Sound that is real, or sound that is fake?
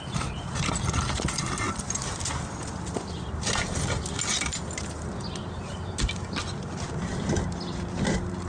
real